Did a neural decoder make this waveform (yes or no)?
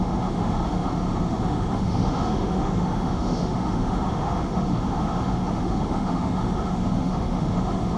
yes